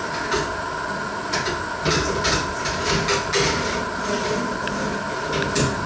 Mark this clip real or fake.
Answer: real